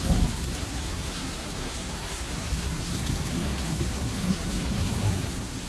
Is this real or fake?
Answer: fake